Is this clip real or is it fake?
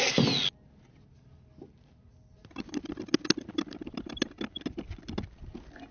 real